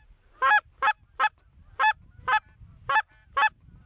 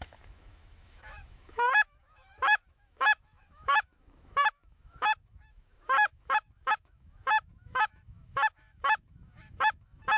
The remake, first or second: second